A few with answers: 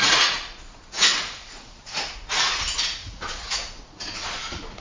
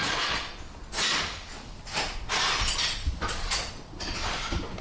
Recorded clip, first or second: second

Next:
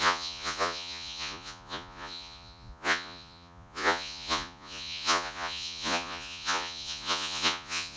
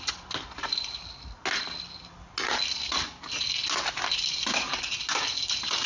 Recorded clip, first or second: second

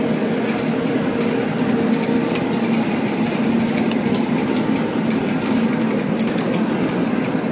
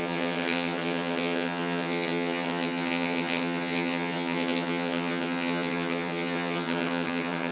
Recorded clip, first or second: first